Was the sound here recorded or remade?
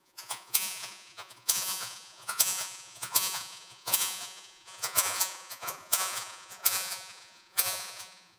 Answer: remade